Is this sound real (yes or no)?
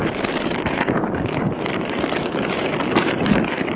no